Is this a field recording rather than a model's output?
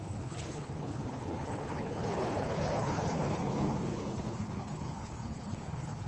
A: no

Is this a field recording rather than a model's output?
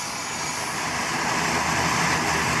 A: yes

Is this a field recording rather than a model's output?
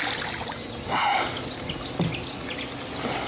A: yes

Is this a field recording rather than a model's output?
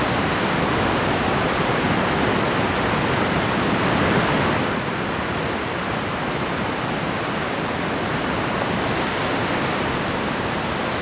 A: yes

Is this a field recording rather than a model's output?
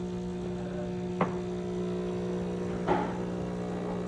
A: yes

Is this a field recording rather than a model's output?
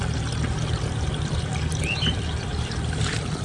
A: yes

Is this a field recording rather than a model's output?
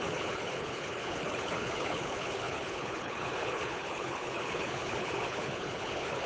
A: no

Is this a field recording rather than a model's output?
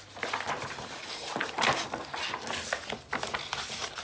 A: yes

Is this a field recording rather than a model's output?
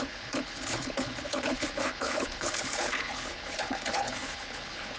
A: no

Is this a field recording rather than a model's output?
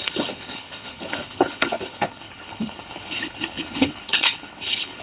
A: no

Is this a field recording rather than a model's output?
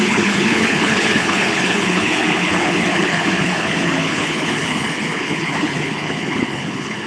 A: no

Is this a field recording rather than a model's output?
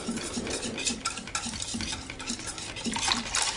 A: yes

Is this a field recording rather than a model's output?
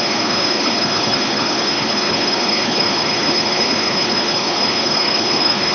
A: no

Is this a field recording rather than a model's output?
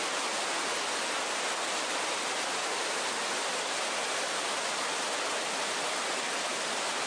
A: yes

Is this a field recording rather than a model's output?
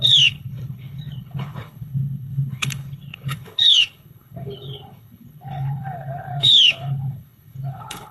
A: no